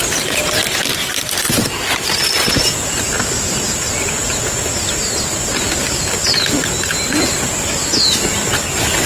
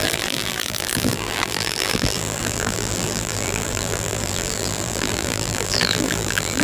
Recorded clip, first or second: first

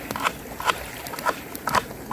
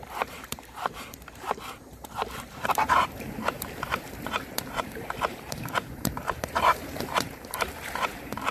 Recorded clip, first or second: first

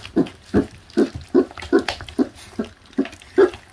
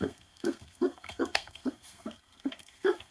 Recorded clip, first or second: first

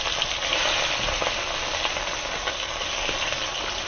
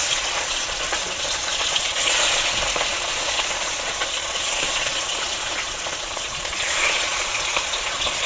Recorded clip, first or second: first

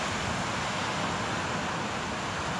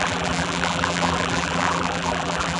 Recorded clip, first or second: first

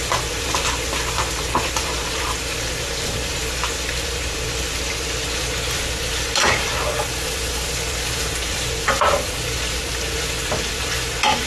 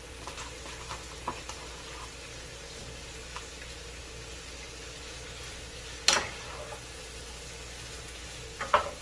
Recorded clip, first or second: second